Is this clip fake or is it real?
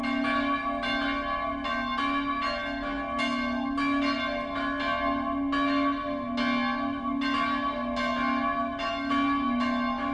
real